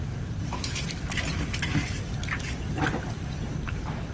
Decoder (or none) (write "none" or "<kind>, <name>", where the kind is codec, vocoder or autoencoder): vocoder, BigVGAN v2